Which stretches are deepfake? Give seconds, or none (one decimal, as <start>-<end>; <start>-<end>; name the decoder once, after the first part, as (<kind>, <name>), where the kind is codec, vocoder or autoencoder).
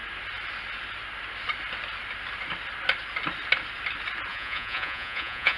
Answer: 4.3-5.6 (vocoder, Vocos)